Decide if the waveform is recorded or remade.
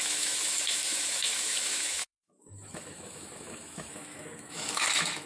remade